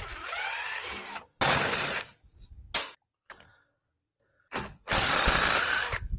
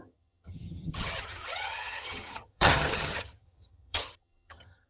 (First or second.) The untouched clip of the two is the first